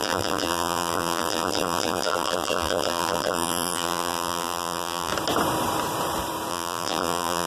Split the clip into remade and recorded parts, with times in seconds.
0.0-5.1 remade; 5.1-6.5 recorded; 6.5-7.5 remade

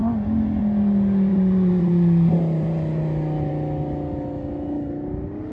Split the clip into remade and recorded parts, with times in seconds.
0.0-1.3 recorded; 1.3-3.5 remade; 3.5-5.5 recorded